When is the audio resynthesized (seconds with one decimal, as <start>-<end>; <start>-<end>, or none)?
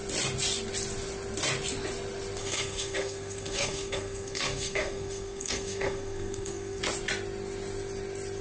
2.4-6.8